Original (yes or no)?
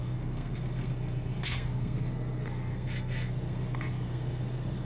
no